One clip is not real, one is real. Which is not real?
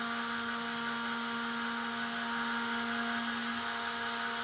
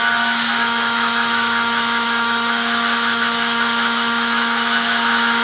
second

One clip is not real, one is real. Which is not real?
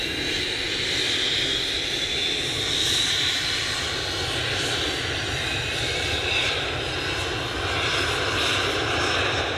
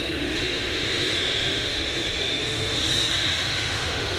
second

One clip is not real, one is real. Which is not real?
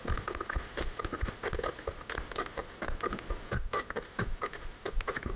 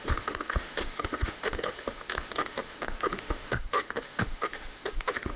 second